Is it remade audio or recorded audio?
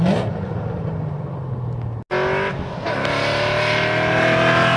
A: recorded